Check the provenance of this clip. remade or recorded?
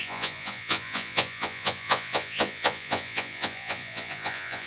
remade